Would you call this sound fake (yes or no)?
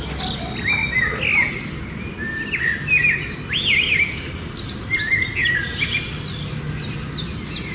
no